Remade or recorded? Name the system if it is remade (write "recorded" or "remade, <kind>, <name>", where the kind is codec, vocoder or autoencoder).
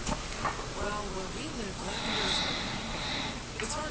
recorded